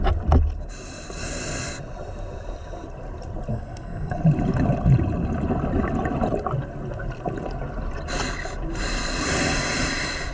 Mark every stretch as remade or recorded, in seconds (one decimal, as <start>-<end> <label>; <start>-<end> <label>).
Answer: 0.0-3.5 recorded; 3.5-4.2 remade; 4.2-10.3 recorded

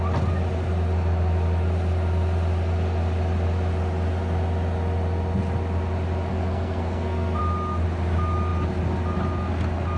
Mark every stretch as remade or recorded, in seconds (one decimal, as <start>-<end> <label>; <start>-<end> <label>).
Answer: 0.0-6.3 recorded; 6.3-7.4 remade; 7.4-10.0 recorded

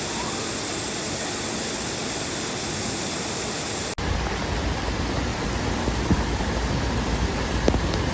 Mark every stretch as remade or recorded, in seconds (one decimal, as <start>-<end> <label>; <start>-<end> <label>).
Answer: 0.0-5.3 recorded; 5.3-6.4 remade; 6.4-8.1 recorded

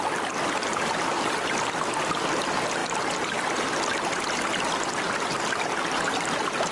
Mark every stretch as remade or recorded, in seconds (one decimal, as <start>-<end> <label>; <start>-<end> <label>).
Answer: 0.0-6.7 recorded